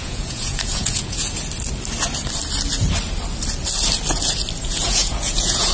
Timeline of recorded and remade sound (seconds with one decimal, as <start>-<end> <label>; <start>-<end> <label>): 0.0-1.2 remade; 1.2-4.6 recorded; 4.6-5.7 remade